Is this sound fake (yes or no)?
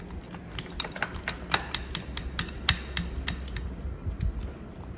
no